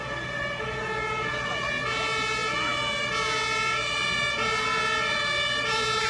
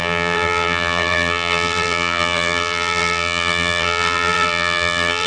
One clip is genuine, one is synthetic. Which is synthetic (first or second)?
second